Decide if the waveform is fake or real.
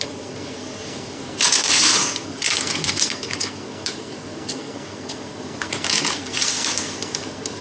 fake